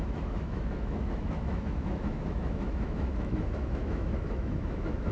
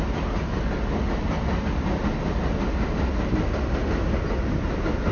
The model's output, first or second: first